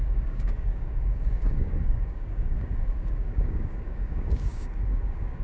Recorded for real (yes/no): no